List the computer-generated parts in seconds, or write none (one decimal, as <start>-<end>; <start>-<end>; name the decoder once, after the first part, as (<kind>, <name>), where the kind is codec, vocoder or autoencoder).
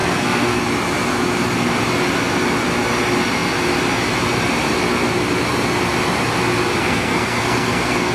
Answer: 0.0-0.6 (codec, SNAC); 6.8-8.1